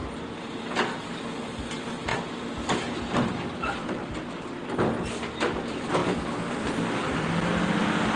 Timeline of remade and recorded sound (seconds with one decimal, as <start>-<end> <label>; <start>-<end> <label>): 0.0-8.2 recorded

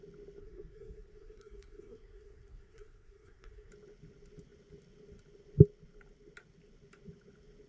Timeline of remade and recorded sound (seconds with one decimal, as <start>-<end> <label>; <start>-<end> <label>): 0.0-0.4 recorded; 0.4-3.7 remade; 3.7-7.7 recorded

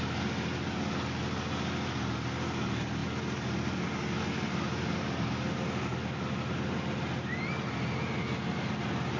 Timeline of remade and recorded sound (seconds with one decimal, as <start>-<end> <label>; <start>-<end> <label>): 0.0-9.2 recorded

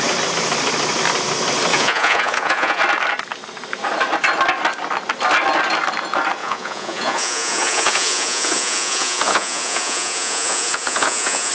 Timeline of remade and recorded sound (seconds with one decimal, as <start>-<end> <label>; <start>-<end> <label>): 0.0-1.7 recorded; 1.7-2.8 remade; 2.8-6.4 recorded; 6.4-11.5 remade

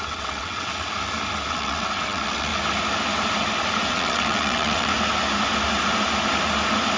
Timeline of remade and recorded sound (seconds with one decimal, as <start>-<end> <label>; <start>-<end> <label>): 0.0-0.7 remade; 0.7-1.5 recorded; 1.5-2.5 remade; 2.5-3.9 recorded; 3.9-4.9 remade; 4.9-7.0 recorded

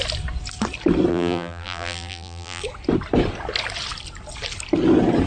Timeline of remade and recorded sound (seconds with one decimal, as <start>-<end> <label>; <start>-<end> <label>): 0.0-1.1 recorded; 1.1-2.6 remade; 2.6-5.3 recorded

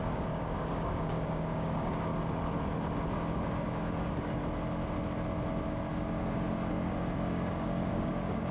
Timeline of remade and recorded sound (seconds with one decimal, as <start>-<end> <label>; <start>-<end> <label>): 0.0-2.1 remade; 2.1-3.3 recorded; 3.3-4.4 remade; 4.4-5.9 recorded; 5.9-8.5 remade

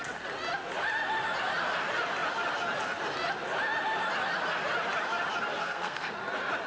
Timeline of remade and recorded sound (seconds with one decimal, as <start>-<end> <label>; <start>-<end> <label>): 0.0-5.5 recorded; 5.5-6.1 remade; 6.1-6.7 recorded